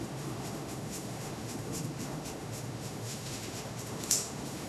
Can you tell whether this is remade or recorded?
remade